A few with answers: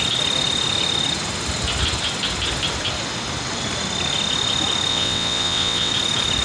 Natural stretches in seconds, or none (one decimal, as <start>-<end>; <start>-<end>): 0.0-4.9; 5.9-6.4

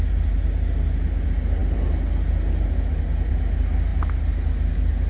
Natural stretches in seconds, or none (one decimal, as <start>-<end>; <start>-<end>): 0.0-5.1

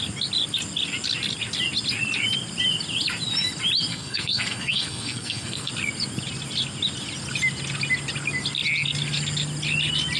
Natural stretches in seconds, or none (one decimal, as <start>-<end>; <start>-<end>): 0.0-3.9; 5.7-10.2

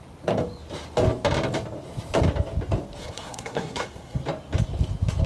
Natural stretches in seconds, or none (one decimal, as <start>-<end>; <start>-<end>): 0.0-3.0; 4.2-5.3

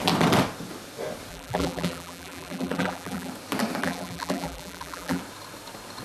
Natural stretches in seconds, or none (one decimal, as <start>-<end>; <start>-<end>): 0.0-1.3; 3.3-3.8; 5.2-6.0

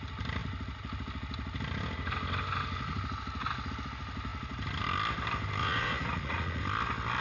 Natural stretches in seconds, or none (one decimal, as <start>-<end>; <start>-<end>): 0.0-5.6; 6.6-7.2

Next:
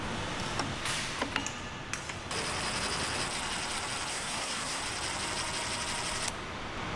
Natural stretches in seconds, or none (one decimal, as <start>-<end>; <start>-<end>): 0.0-4.1; 4.8-7.0

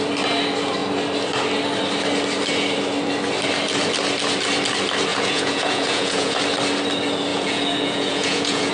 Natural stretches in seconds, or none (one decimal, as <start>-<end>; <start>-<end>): 0.0-5.1; 6.4-7.3